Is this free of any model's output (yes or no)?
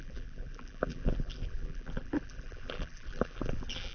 no